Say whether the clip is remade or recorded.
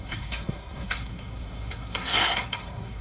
remade